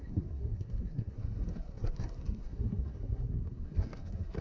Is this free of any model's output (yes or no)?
no